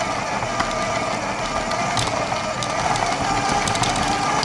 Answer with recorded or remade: recorded